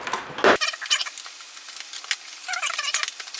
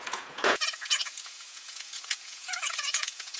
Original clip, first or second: first